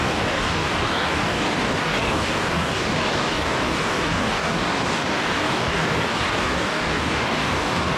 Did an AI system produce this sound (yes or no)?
yes